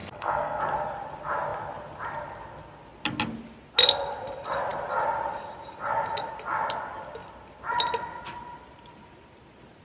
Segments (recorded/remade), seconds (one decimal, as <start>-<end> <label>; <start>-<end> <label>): 0.0-0.6 remade; 0.6-9.8 recorded